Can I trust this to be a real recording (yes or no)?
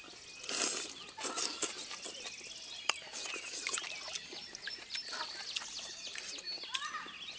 yes